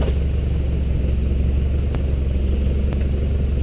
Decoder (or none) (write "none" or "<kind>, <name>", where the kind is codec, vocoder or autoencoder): none